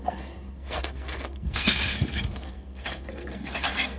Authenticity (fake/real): fake